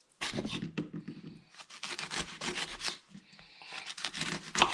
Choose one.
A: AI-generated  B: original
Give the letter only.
B